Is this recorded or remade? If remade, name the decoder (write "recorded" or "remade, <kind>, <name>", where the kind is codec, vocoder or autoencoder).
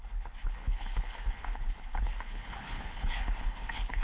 remade, codec, HILCodec